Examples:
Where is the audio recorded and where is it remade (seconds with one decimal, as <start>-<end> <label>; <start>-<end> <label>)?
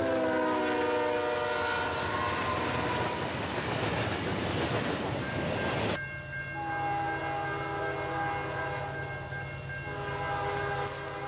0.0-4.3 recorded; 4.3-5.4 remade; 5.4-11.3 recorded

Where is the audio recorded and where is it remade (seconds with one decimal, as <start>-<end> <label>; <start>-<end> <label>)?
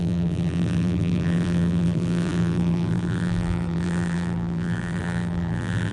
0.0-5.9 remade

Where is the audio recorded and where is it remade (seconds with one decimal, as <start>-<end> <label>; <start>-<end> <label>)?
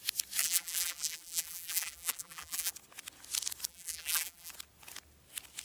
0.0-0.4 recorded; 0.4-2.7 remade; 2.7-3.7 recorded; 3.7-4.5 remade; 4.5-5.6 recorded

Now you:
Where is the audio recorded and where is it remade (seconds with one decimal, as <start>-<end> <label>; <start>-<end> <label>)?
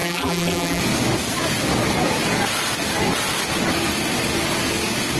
0.0-0.8 remade; 0.8-5.2 recorded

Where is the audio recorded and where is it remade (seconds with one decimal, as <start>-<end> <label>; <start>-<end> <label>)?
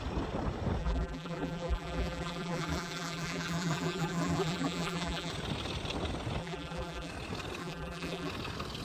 0.0-0.8 recorded; 0.8-5.3 remade; 5.3-6.4 recorded; 6.4-7.1 remade; 7.1-7.6 recorded; 7.6-8.3 remade; 8.3-8.8 recorded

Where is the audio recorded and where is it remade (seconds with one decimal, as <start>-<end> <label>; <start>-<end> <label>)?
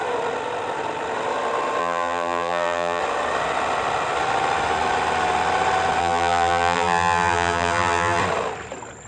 0.0-1.8 recorded; 1.8-3.0 remade; 3.0-6.0 recorded; 6.0-8.2 remade; 8.2-9.1 recorded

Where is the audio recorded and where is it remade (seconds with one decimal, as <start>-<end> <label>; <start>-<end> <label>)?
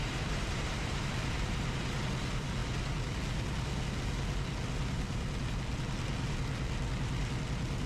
0.0-2.0 remade; 2.0-7.9 recorded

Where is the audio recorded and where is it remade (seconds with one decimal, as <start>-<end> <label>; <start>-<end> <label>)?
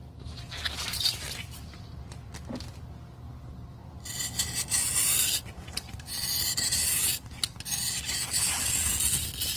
0.0-9.6 recorded